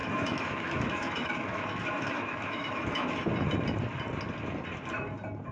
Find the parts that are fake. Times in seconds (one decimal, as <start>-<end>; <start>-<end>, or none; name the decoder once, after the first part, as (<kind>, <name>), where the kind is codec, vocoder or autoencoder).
0.0-3.3 (autoencoder, DAC-VAE)